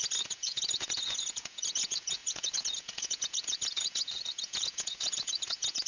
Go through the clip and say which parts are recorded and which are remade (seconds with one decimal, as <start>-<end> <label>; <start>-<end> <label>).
0.0-5.9 remade